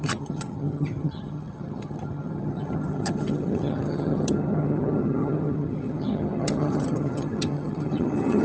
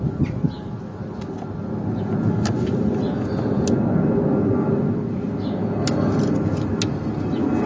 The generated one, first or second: first